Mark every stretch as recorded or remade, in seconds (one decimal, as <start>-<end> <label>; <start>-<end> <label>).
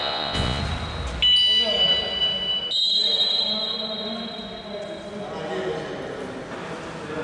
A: 0.0-0.6 remade; 0.6-7.2 recorded